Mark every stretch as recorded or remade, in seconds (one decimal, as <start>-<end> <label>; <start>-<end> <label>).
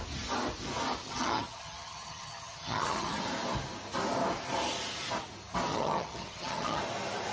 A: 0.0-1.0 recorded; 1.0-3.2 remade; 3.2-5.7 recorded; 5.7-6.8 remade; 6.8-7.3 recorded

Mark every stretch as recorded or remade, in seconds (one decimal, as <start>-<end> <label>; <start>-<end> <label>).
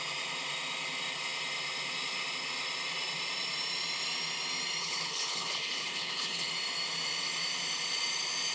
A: 0.0-4.8 recorded; 4.8-6.5 remade; 6.5-8.5 recorded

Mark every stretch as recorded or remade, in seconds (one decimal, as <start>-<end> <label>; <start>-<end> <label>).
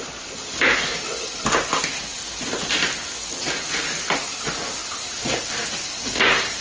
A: 0.0-6.6 recorded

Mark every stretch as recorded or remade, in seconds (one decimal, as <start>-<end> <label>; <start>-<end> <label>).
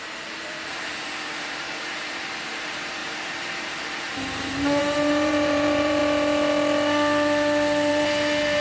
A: 0.0-6.0 remade; 6.0-7.9 recorded; 7.9-8.6 remade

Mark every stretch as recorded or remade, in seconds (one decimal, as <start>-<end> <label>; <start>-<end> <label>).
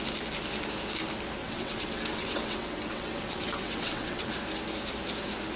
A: 0.0-1.4 recorded; 1.4-4.3 remade; 4.3-5.6 recorded